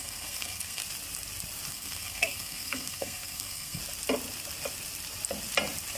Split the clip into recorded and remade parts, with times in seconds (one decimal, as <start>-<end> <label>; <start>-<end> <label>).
0.0-0.8 remade; 0.8-1.7 recorded; 1.7-3.8 remade; 3.8-6.0 recorded